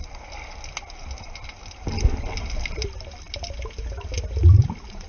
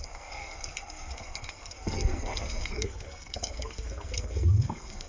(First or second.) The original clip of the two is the first